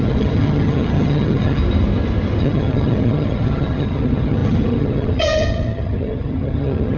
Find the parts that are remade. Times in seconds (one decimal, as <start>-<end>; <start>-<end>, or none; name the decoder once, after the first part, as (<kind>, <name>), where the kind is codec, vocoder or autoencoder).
0.0-1.6 (vocoder, HiFi-GAN); 2.4-7.0